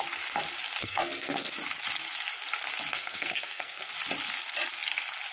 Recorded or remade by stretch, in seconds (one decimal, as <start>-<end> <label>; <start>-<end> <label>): 0.0-0.8 recorded; 0.8-1.5 remade; 1.5-2.9 recorded; 2.9-3.9 remade; 3.9-5.3 recorded